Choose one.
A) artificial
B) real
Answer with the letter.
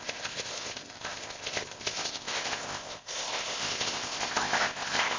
A